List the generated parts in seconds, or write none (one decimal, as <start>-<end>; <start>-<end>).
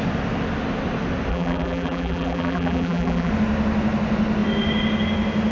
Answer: 1.3-3.3